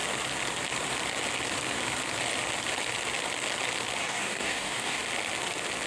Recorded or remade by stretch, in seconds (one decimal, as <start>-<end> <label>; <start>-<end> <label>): 0.0-4.0 recorded; 4.0-5.0 remade; 5.0-5.9 recorded